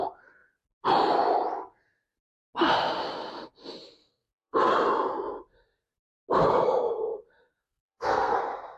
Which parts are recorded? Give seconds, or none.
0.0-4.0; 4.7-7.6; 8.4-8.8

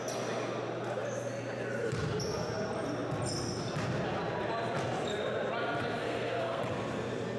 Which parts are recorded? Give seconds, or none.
0.0-6.0; 6.6-7.4

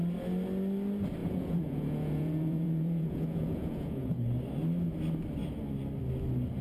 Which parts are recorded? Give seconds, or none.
0.0-1.2; 4.2-6.6